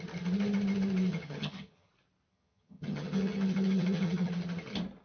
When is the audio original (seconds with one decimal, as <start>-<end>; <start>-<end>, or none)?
0.0-1.1; 1.9-2.3; 4.3-5.0